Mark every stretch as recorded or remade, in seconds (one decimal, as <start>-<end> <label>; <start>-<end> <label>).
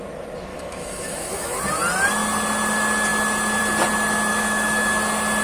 0.0-0.5 recorded; 0.5-1.6 remade; 1.6-4.3 recorded; 4.3-4.9 remade; 4.9-5.4 recorded